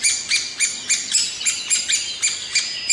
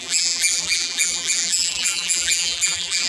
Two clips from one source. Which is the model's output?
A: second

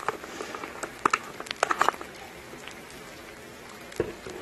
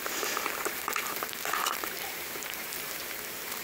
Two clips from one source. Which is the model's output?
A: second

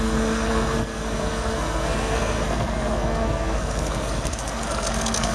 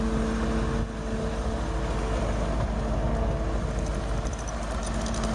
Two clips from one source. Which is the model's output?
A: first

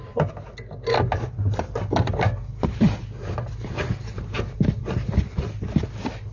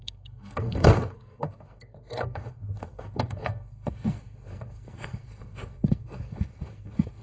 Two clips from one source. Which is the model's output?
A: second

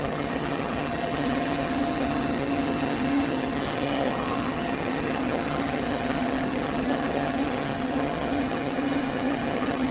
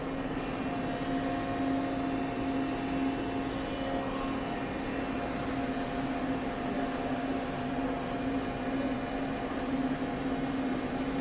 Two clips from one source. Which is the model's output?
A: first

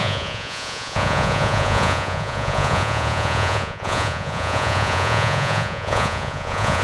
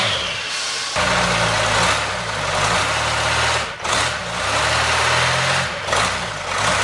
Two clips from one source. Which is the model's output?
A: first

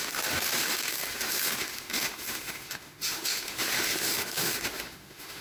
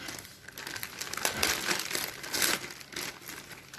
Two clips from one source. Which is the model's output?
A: first